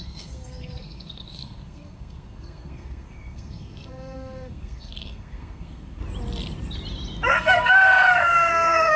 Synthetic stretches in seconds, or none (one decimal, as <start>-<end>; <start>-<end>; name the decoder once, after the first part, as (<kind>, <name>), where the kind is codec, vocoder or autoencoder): 0.0-6.0 (codec, SNAC); 7.3-9.0